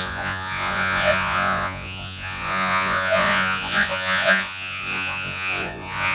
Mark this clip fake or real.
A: fake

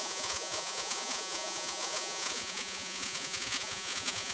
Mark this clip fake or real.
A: fake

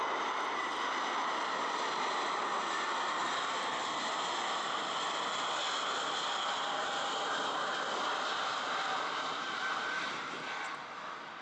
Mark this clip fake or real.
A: fake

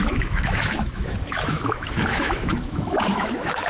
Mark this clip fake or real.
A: fake